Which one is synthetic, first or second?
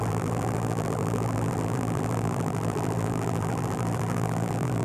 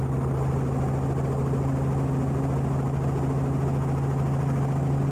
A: first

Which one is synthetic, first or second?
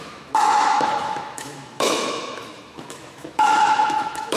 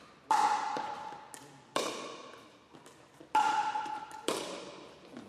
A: first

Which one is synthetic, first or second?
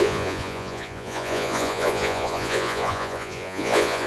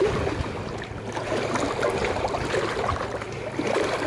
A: first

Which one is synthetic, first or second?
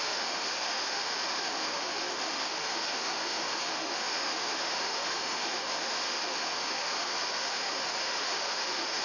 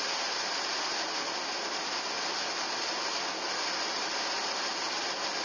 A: first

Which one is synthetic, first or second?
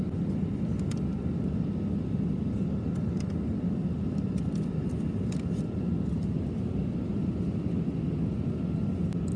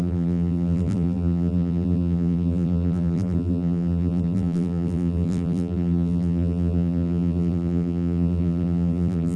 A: second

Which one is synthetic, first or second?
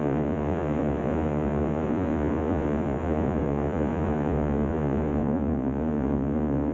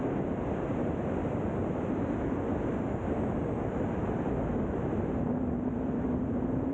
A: first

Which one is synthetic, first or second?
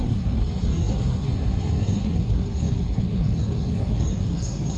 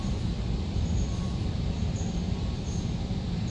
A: first